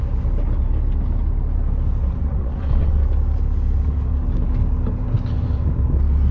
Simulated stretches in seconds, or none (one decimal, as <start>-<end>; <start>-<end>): 2.2-3.0